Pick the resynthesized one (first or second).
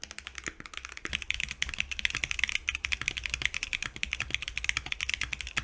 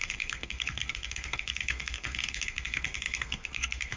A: second